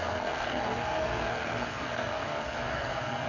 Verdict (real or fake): fake